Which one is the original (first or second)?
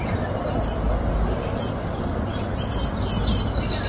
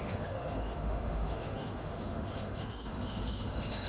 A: first